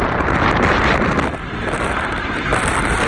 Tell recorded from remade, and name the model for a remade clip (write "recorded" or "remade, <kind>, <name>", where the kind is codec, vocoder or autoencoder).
recorded